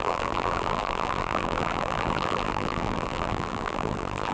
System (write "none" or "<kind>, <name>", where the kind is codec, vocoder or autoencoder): vocoder, BigVGAN v2